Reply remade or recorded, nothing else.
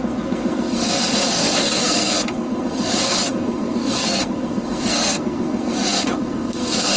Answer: remade